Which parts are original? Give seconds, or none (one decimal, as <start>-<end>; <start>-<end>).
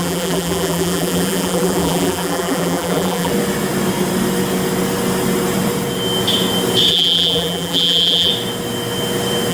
3.3-6.9; 8.3-9.5